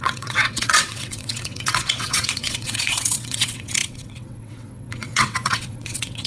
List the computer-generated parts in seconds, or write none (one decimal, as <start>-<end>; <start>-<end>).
0.0-6.3